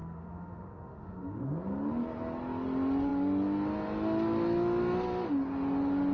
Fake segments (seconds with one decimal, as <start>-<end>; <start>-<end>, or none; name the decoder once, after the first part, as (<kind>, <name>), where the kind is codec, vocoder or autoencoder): 0.0-1.4 (autoencoder, DAC-VAE)